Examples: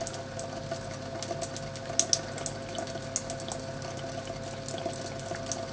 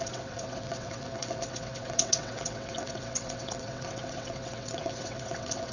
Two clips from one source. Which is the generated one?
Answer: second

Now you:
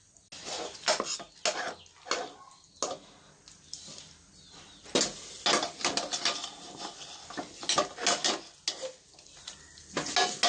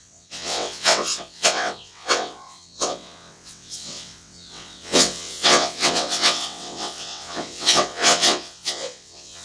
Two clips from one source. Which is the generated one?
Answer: second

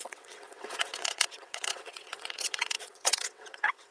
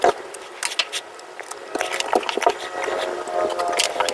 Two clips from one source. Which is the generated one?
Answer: first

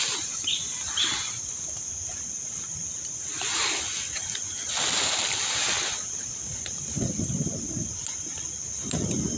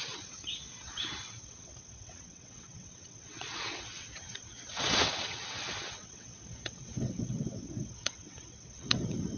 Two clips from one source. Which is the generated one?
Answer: second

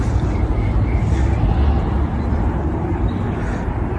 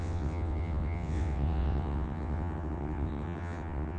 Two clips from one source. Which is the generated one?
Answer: second